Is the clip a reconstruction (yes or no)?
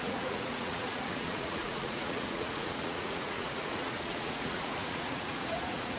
yes